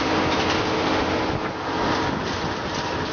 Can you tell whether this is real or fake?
real